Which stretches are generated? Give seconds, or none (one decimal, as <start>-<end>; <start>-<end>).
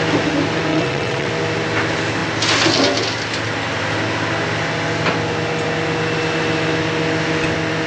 0.7-1.3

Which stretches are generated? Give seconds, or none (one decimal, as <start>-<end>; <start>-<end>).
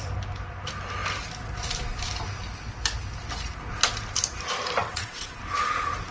4.8-5.4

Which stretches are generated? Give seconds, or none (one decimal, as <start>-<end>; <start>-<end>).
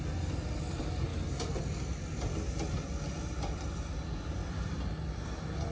none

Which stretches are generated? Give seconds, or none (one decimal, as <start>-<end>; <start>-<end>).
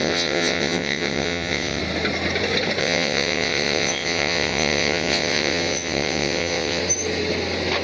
0.0-1.8; 2.8-6.8